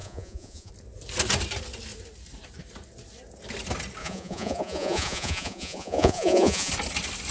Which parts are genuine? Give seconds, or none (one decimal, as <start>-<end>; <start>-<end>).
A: 0.7-4.0; 6.7-7.3